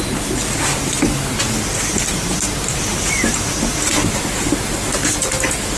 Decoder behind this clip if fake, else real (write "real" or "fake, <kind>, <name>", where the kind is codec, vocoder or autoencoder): real